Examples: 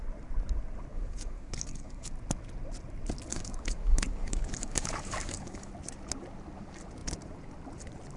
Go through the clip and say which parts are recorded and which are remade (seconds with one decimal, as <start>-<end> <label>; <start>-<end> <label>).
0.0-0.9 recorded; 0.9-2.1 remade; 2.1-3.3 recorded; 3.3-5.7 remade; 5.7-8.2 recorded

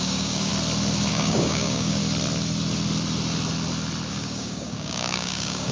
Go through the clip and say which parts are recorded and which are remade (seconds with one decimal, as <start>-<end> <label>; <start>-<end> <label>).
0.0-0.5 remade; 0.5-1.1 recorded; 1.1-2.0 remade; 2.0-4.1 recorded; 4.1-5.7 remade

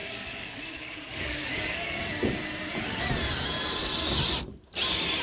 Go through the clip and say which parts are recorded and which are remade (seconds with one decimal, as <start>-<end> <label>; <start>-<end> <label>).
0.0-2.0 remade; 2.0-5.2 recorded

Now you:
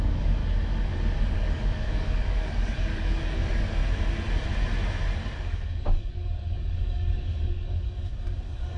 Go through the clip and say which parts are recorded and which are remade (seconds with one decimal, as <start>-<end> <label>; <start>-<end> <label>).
0.0-0.4 remade; 0.4-1.2 recorded; 1.2-3.8 remade; 3.8-5.4 recorded; 5.4-8.8 remade

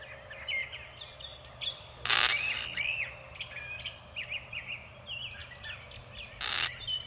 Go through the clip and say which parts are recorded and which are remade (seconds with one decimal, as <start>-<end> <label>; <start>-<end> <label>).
0.0-7.1 recorded

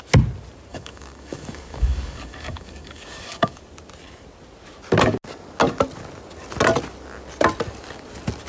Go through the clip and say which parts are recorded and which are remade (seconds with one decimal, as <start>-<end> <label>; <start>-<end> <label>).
0.0-0.7 recorded; 0.7-3.6 remade; 3.6-8.5 recorded